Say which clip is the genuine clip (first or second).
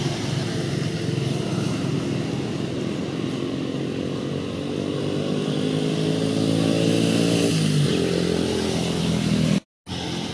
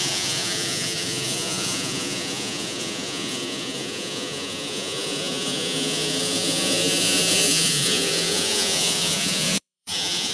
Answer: first